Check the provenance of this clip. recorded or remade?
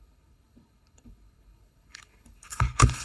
remade